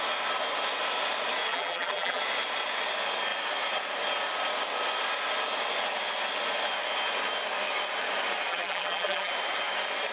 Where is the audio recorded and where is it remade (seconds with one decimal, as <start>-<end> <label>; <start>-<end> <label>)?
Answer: 0.0-1.5 recorded; 1.5-2.2 remade; 2.2-8.5 recorded; 8.5-9.3 remade; 9.3-10.1 recorded

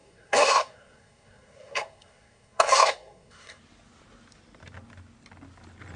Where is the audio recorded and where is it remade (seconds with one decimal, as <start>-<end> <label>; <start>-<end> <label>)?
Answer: 0.0-3.6 remade; 3.6-6.0 recorded

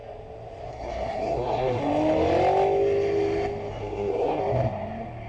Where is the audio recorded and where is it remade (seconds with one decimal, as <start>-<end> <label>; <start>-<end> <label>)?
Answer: 0.0-0.7 recorded; 0.7-1.8 remade; 1.8-3.7 recorded; 3.7-4.4 remade; 4.4-5.3 recorded

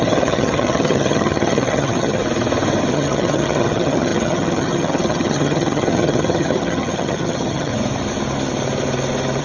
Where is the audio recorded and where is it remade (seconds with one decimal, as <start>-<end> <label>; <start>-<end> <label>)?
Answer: 0.0-2.2 remade; 2.2-2.9 recorded; 2.9-7.7 remade; 7.7-9.4 recorded

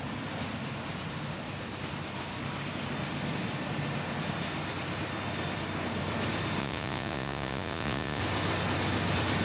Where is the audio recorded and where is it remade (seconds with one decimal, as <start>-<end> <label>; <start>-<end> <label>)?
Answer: 0.0-6.6 recorded; 6.6-8.2 remade; 8.2-9.4 recorded

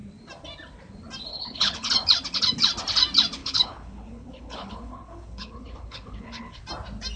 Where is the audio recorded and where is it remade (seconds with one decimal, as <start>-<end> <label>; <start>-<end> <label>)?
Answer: 0.0-1.3 recorded; 1.3-1.9 remade; 1.9-3.4 recorded; 3.4-6.6 remade; 6.6-7.2 recorded

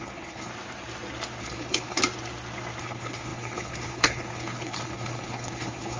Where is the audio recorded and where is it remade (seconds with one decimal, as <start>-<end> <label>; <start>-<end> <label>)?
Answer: 0.0-0.5 remade; 0.5-1.4 recorded; 1.4-2.0 remade; 2.0-2.8 recorded; 2.8-6.0 remade

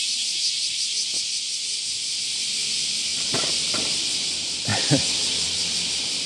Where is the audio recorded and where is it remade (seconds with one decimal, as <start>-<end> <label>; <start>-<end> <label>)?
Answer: 0.0-3.1 recorded; 3.1-4.0 remade; 4.0-4.7 recorded; 4.7-6.3 remade